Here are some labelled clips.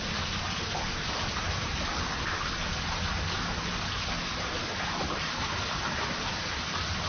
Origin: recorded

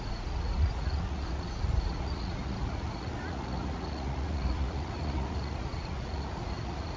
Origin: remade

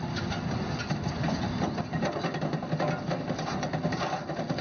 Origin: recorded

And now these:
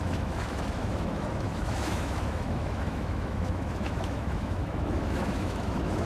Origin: remade